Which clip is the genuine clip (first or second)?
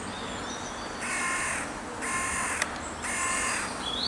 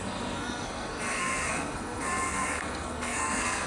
first